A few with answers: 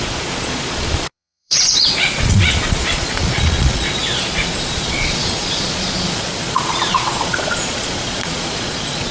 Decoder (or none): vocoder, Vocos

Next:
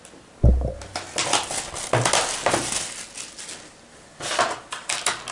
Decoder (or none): none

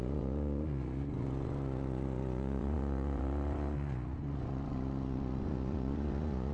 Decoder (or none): vocoder, Vocos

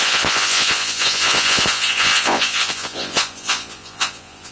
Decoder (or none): vocoder, Vocos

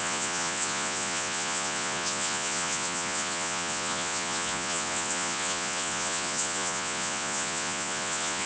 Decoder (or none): vocoder, Vocos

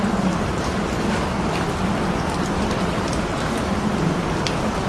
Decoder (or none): none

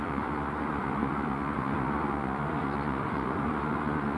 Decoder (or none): vocoder, Vocos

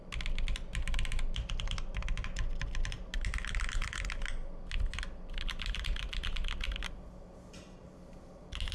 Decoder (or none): none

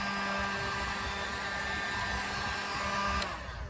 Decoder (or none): none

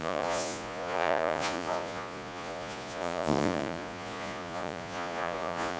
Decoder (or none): vocoder, Vocos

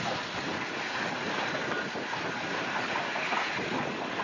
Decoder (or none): none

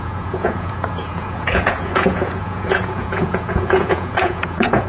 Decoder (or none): vocoder, Vocos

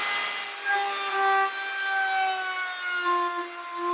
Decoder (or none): none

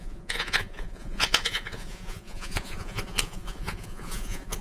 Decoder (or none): vocoder, Vocos